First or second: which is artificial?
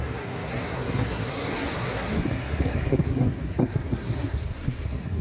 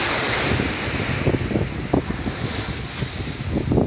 first